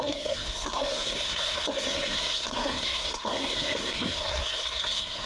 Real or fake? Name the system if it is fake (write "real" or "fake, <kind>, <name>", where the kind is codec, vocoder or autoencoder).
fake, codec, SNAC